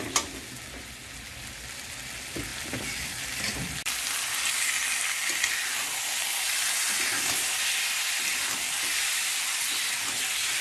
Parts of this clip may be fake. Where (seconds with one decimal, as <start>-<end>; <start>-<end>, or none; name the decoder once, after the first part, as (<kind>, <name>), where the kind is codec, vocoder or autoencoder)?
2.5-4.1 (vocoder, BigVGAN v2)